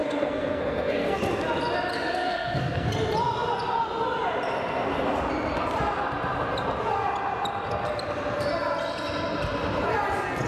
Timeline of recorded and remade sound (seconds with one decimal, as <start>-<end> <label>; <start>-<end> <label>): 0.0-1.2 remade; 1.2-1.9 recorded; 1.9-2.9 remade; 2.9-10.5 recorded